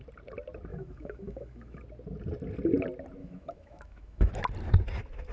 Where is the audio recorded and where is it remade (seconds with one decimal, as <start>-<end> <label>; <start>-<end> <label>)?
0.0-0.7 recorded; 0.7-1.8 remade; 1.8-3.2 recorded; 3.2-4.3 remade; 4.3-5.3 recorded